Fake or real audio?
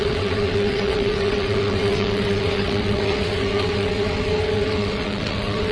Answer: fake